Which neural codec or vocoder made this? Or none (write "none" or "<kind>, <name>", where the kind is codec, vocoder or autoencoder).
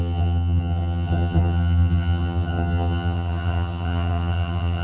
vocoder, HiFi-GAN